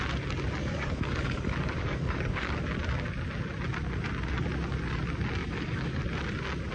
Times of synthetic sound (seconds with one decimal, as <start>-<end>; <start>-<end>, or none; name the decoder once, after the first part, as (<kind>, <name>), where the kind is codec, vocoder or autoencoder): 0.6-2.5 (codec, DAC); 5.4-6.0